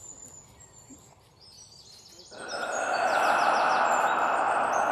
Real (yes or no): yes